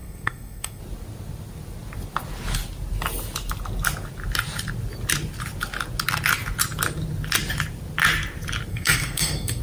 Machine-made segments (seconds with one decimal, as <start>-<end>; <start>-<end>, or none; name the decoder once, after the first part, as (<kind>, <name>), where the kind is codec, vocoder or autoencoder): 0.0-0.8 (codec, SNAC); 8.7-9.6